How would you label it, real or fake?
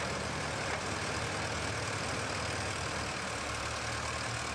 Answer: real